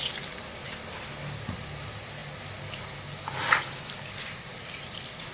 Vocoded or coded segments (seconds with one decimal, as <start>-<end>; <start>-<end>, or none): none